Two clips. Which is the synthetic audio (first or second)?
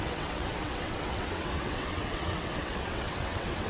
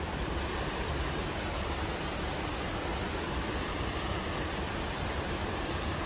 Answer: first